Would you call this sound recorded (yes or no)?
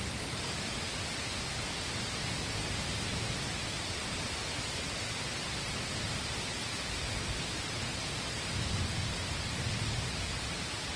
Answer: yes